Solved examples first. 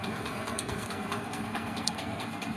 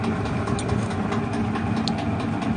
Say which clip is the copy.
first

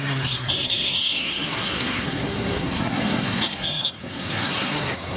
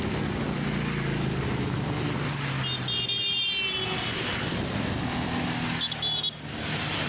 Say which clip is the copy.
first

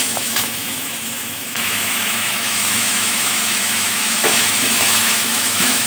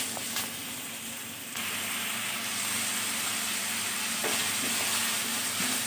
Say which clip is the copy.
first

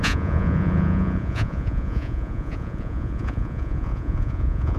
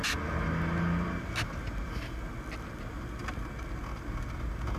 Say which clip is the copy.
first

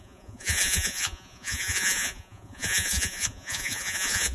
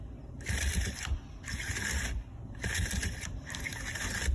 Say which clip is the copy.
first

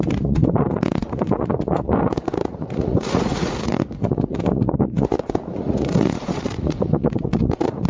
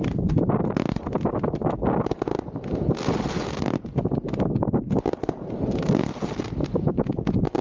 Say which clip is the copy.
first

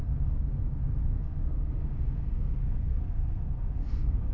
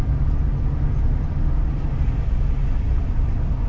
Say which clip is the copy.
first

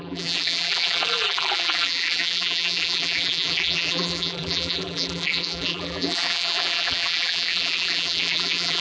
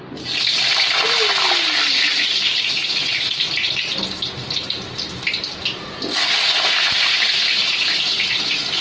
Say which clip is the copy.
first